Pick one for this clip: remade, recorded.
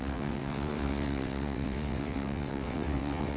remade